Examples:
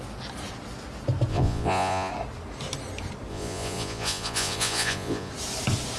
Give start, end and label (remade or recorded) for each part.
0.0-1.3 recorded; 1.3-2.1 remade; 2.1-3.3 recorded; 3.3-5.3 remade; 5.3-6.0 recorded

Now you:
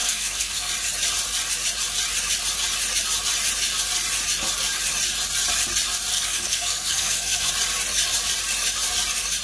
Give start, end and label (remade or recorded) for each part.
0.0-0.7 remade; 0.7-6.1 recorded; 6.1-7.5 remade; 7.5-9.4 recorded

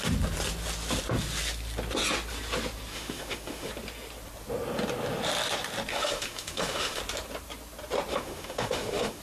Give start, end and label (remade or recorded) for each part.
0.0-2.9 recorded; 2.9-3.7 remade; 3.7-5.9 recorded; 5.9-7.0 remade; 7.0-8.1 recorded; 8.1-9.2 remade

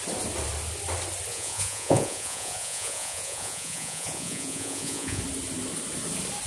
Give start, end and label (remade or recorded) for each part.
0.0-1.3 recorded; 1.3-5.2 remade; 5.2-6.5 recorded